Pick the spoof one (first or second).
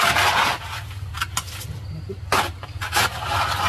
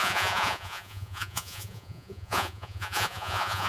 second